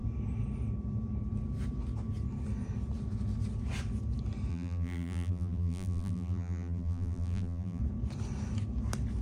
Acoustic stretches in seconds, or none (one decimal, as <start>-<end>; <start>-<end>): 0.0-4.5; 7.8-9.2